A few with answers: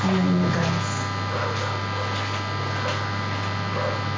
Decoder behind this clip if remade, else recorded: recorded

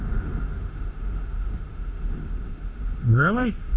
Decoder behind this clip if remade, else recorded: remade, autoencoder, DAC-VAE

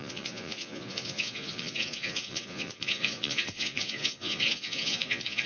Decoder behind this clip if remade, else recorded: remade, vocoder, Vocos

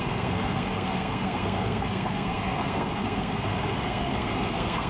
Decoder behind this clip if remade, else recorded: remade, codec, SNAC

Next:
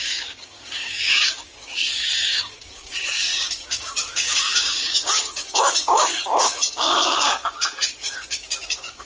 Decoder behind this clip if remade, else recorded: remade, codec, DAC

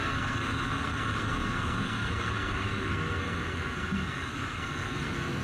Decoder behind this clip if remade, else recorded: remade, codec, SNAC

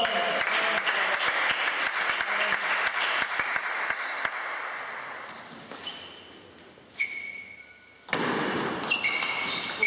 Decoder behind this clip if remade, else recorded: recorded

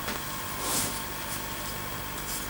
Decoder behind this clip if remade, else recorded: recorded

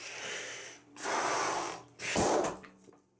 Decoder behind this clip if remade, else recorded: recorded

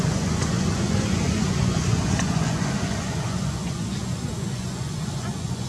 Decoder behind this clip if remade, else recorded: remade, vocoder, Vocos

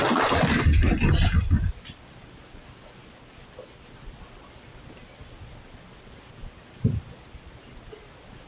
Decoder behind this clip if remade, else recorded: recorded